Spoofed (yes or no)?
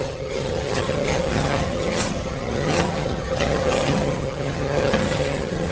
yes